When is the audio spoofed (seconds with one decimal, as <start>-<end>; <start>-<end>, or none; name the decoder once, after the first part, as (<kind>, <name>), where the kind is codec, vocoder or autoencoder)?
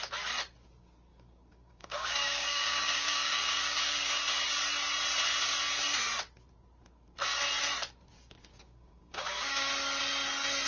1.1-4.2 (codec, DAC); 8.5-9.7